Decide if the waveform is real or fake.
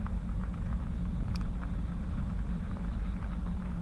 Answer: real